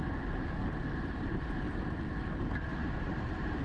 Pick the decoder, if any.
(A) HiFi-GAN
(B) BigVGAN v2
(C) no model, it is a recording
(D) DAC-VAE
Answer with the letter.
C